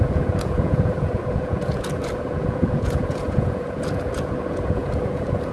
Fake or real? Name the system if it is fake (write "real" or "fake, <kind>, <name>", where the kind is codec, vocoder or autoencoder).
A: fake, vocoder, Vocos